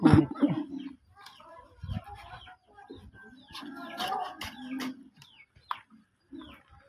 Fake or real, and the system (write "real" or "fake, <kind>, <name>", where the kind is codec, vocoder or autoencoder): real